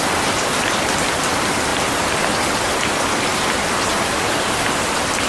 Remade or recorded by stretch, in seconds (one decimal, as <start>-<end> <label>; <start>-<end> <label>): 0.0-5.3 recorded